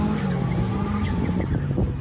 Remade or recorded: recorded